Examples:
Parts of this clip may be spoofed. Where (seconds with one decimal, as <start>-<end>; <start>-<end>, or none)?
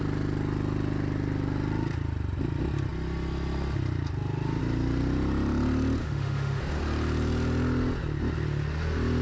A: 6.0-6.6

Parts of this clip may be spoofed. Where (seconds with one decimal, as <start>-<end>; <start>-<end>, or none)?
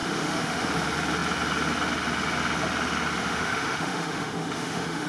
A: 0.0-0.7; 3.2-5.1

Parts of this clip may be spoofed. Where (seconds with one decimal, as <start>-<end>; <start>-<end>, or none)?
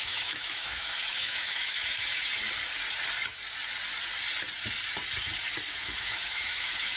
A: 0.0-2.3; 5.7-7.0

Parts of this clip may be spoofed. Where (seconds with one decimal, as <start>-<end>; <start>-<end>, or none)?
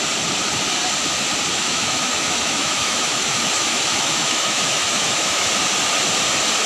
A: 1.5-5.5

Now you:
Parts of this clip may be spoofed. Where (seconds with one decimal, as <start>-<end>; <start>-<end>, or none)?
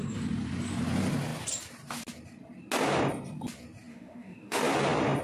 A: 3.9-4.6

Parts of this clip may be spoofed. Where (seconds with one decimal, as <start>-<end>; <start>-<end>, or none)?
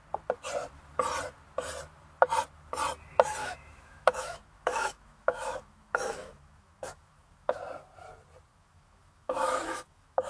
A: 3.4-7.6; 8.5-10.3